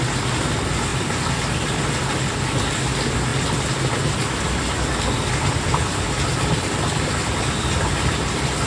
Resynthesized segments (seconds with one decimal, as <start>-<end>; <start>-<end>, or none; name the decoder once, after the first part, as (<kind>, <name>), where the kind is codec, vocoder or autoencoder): none